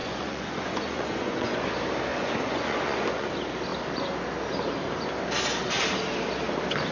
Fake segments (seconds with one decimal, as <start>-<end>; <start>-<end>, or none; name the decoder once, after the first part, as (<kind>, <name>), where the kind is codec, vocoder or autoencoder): 0.0-1.6 (vocoder, Vocos); 2.1-3.3